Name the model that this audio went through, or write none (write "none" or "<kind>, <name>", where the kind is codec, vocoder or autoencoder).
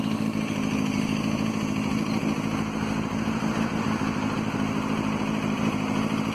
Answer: none